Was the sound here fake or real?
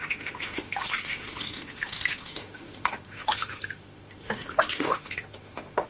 fake